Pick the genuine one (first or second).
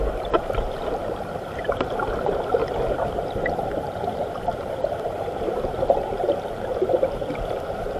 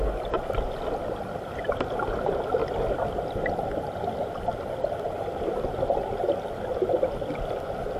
second